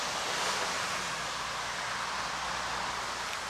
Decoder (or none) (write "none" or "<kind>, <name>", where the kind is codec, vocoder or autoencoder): none